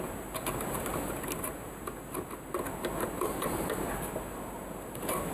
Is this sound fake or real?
real